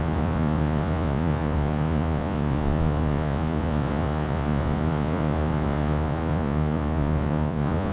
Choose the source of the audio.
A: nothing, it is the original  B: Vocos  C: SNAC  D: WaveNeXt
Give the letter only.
B